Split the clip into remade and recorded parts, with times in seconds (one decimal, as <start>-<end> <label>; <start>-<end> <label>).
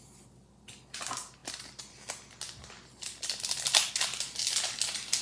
0.0-5.2 recorded